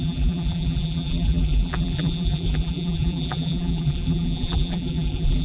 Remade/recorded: remade